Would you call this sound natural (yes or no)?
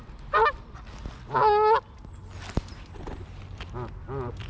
yes